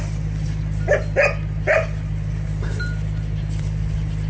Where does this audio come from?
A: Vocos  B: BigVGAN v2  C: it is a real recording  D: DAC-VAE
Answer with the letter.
C